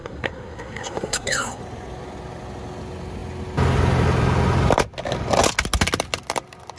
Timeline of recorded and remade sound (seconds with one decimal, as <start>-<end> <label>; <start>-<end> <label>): 0.0-1.6 remade; 1.6-6.8 recorded